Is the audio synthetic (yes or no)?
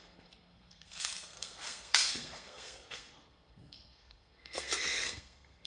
yes